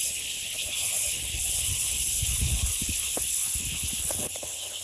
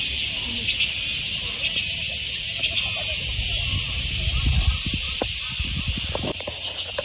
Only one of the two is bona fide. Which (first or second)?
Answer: second